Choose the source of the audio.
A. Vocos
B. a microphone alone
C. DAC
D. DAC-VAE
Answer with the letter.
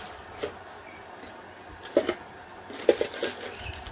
B